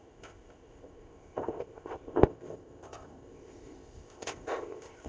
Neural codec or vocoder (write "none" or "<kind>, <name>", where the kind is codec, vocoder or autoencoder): codec, ZipCodec